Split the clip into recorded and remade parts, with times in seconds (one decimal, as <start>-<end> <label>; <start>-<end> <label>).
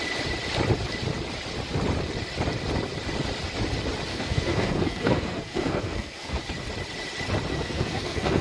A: 0.0-4.1 recorded; 4.1-6.4 remade; 6.4-7.5 recorded; 7.5-8.4 remade